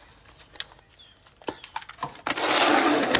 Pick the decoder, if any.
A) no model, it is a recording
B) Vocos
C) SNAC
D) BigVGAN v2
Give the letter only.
A